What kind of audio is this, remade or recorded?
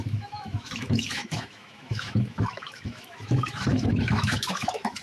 remade